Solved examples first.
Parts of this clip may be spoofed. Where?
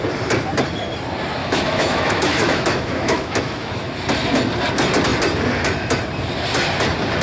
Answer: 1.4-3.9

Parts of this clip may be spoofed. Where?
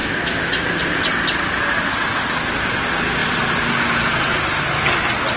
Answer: 0.0-0.8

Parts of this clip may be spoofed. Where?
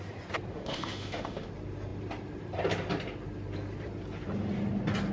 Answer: 0.5-1.5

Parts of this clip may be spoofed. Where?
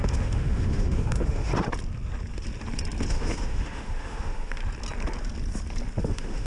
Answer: 0.0-1.5; 3.1-4.6; 6.0-6.5